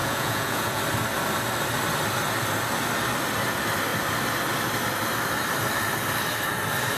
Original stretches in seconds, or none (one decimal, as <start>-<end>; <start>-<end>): 0.8-7.0